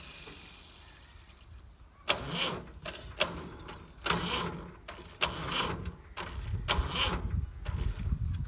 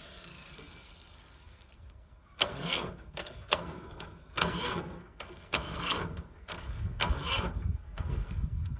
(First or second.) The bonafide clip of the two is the first